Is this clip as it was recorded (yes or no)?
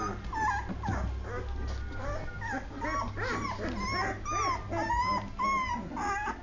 yes